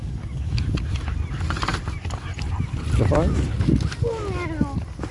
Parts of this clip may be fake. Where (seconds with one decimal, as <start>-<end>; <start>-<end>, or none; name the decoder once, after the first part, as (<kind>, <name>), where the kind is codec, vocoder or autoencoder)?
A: 0.0-0.6 (codec, DAC)